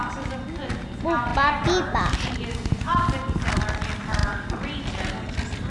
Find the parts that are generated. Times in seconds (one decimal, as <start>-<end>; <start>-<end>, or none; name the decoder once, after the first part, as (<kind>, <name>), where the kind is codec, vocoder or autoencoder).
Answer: none